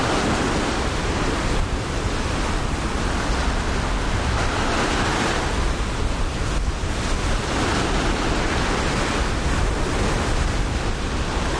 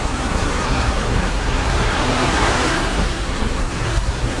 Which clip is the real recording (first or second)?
first